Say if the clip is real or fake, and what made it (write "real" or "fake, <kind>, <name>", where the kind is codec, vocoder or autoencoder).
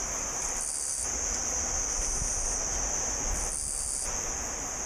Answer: real